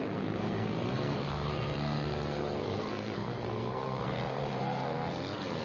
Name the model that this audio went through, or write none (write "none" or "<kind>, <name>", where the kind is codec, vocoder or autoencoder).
codec, SNAC